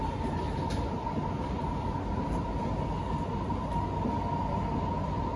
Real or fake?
real